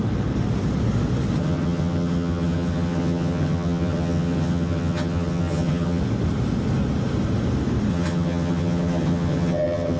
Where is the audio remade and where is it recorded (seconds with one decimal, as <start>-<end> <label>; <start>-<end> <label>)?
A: 0.0-1.4 recorded; 1.4-6.0 remade; 6.0-7.9 recorded; 7.9-10.0 remade